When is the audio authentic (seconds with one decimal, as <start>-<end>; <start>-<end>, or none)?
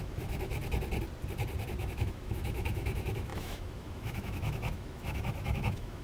0.5-1.8